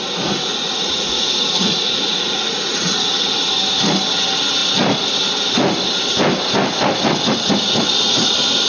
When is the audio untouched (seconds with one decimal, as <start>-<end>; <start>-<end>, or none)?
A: 0.0-0.5; 3.5-8.7